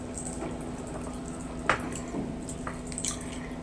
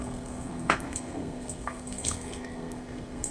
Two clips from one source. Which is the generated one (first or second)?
second